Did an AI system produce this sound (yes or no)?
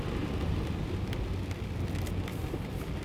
no